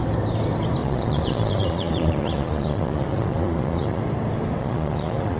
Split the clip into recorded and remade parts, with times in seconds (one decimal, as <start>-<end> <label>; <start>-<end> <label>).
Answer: 0.0-0.8 recorded; 0.8-4.0 remade; 4.0-4.6 recorded; 4.6-5.4 remade